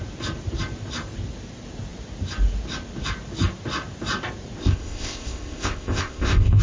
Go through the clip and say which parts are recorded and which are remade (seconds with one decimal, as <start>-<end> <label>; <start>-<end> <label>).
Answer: 0.0-4.6 recorded; 4.6-6.6 remade